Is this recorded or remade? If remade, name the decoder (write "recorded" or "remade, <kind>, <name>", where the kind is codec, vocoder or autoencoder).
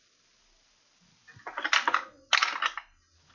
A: recorded